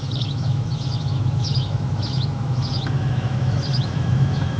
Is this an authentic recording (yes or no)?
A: no